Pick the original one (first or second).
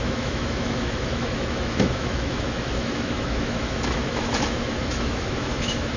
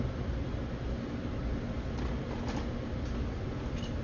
second